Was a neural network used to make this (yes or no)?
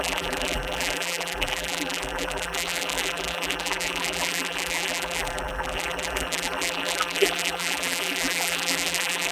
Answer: yes